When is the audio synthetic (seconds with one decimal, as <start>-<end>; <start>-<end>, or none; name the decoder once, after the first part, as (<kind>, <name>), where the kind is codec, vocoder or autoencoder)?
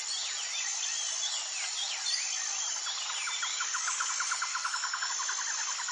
3.5-4.1 (codec, DAC); 4.5-5.1